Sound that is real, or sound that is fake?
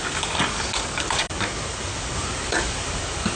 fake